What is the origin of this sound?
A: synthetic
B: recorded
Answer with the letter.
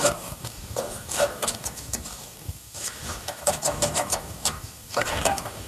A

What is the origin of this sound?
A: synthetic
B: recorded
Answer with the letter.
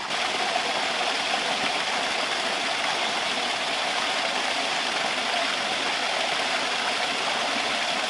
B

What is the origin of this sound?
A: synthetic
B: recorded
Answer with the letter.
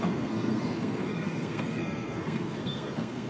A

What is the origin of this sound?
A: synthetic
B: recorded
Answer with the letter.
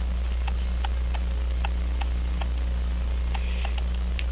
B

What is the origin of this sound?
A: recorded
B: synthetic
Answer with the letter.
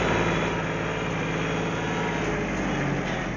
A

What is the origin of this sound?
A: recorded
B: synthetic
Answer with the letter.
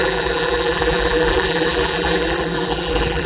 B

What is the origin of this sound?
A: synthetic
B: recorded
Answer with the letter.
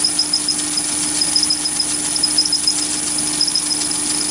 B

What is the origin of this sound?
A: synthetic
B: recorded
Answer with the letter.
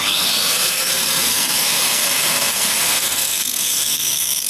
A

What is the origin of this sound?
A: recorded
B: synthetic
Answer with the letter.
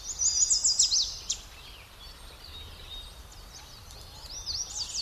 A